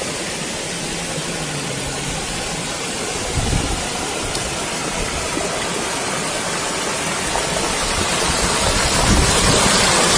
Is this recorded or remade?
recorded